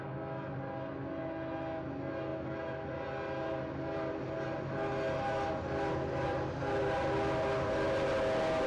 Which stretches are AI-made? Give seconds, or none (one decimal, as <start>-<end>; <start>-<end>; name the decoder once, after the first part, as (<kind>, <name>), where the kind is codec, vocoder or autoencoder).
none